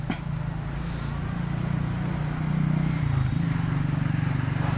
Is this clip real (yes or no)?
yes